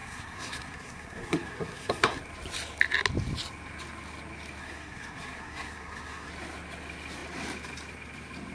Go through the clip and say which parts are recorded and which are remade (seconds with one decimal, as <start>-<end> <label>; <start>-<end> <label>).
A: 0.0-2.2 remade; 2.2-4.6 recorded; 4.6-6.3 remade; 6.3-8.5 recorded